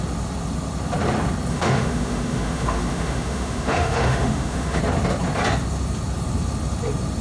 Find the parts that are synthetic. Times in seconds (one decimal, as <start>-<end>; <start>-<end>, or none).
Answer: 1.5-4.8